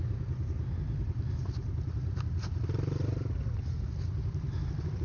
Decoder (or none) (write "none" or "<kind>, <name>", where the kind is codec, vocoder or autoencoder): none